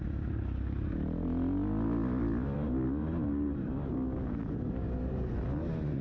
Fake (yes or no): no